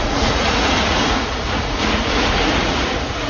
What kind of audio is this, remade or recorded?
remade